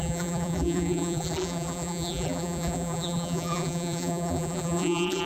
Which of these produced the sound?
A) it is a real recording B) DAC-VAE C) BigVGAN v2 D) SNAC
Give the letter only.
C